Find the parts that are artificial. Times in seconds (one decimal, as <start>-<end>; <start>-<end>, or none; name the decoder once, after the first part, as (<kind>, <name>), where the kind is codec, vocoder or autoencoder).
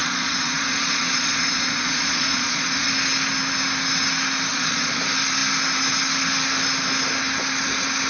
0.0-2.9 (vocoder, Vocos); 4.5-5.0